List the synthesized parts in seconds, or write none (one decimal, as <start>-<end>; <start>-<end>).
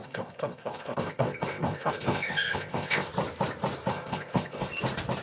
0.0-3.1; 3.9-4.7